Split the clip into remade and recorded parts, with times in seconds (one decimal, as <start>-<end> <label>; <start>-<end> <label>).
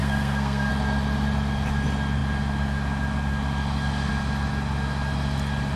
0.0-0.7 remade; 0.7-5.8 recorded